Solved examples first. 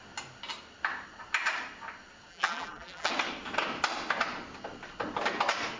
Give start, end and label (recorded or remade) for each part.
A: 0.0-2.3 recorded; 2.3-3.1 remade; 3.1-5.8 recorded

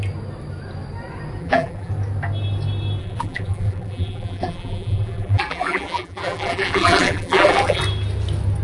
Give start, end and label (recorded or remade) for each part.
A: 0.0-1.4 recorded; 1.4-1.9 remade; 1.9-3.0 recorded; 3.0-7.8 remade; 7.8-8.6 recorded

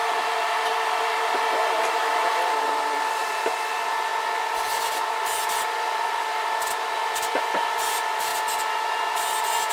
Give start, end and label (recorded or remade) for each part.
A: 0.0-1.8 recorded; 1.8-4.1 remade; 4.1-7.7 recorded; 7.7-8.3 remade; 8.3-9.7 recorded